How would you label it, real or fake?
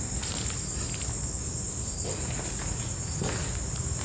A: real